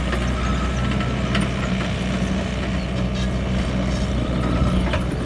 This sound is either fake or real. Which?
real